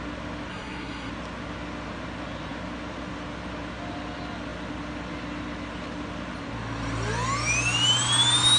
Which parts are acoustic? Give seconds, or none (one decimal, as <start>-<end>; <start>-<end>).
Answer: 0.0-0.5; 1.1-8.6